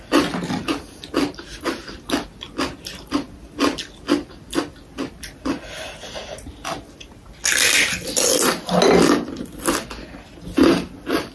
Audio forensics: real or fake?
real